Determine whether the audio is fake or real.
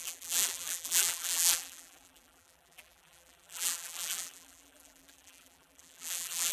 fake